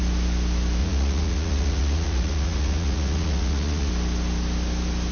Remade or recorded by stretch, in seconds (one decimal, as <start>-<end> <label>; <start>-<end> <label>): 0.0-0.8 recorded; 0.8-3.9 remade; 3.9-5.1 recorded